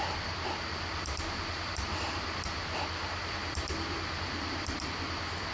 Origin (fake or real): real